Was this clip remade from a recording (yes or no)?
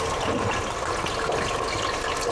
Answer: no